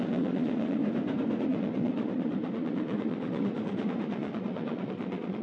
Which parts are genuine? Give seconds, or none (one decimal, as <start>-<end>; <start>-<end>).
0.8-1.4